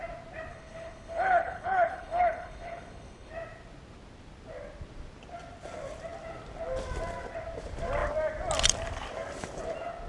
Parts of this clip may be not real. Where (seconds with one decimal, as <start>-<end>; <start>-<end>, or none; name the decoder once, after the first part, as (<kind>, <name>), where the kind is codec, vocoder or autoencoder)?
0.5-3.3 (codec, HILCodec)